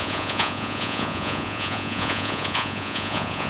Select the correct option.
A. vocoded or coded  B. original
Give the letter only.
A